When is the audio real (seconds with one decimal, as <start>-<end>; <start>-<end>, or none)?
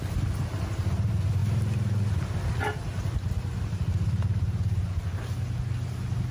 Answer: 0.0-6.3